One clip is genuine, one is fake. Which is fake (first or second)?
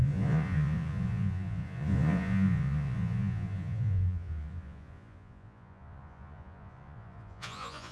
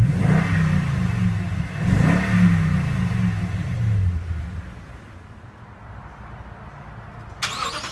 first